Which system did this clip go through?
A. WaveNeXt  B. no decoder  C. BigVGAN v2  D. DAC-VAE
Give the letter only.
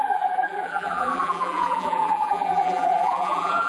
C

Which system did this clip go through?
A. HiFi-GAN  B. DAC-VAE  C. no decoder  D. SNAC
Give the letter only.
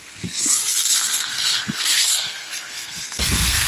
D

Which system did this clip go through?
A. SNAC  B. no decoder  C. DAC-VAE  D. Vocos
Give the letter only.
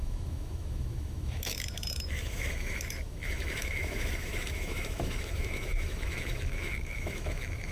C